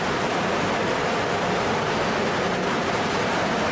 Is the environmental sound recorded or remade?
recorded